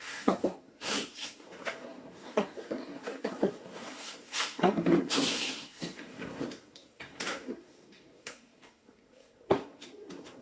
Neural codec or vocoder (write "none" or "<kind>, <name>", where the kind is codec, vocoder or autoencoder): codec, SNAC